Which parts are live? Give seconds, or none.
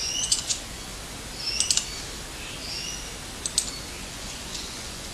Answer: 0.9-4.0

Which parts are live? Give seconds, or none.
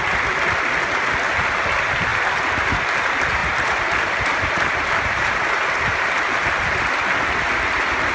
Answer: 0.0-3.4; 5.3-5.9; 6.8-8.1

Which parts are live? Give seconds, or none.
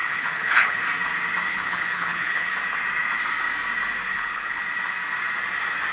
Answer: 0.8-1.5; 2.5-4.1; 4.6-5.9